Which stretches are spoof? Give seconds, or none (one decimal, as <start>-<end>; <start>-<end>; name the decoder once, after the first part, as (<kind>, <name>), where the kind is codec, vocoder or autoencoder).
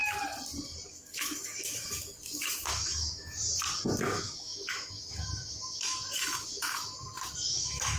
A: 0.9-3.4 (autoencoder, DAC-VAE); 4.0-8.0